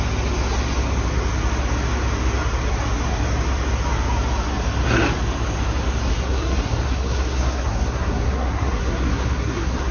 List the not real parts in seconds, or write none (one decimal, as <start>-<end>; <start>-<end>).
6.1-9.9